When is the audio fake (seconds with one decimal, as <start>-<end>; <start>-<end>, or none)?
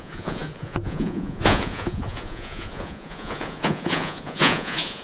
0.0-5.0